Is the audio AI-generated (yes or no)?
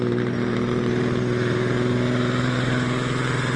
yes